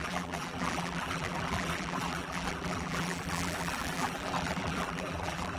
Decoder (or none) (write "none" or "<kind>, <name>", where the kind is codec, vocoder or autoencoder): vocoder, BigVGAN v2